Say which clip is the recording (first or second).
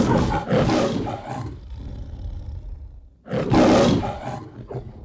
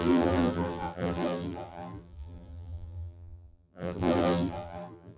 first